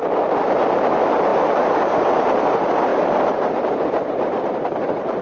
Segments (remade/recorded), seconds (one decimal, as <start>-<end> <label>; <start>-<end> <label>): 0.0-1.3 recorded; 1.3-2.5 remade; 2.5-2.9 recorded; 2.9-5.2 remade